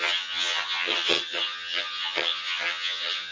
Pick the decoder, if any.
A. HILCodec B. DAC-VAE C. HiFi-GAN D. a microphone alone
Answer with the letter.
C